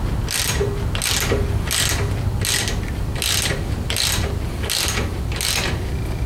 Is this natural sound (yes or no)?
yes